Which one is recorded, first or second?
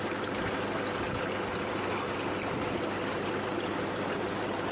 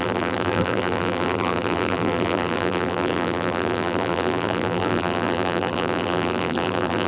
first